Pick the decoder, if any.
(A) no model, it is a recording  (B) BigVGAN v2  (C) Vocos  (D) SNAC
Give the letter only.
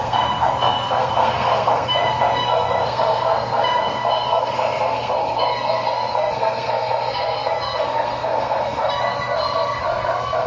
D